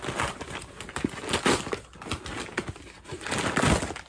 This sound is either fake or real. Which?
real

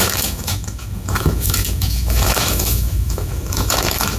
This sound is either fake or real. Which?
fake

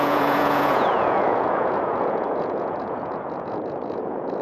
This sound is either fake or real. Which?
fake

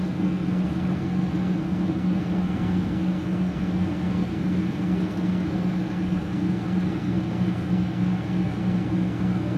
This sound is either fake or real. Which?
fake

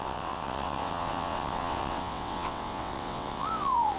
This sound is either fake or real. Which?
fake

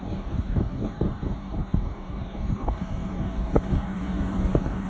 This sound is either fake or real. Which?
fake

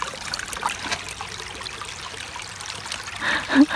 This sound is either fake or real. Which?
real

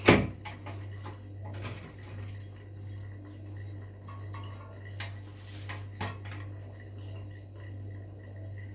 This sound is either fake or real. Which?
real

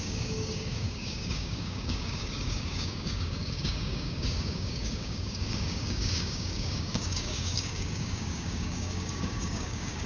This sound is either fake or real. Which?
fake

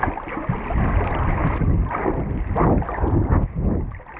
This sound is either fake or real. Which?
real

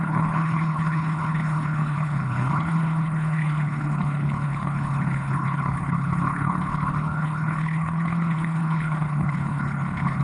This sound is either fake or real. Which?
fake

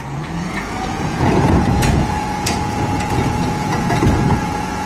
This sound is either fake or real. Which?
fake